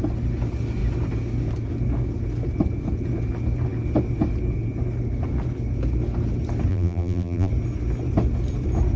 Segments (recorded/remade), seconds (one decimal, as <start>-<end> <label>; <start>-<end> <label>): 0.0-6.7 recorded; 6.7-7.5 remade; 7.5-9.0 recorded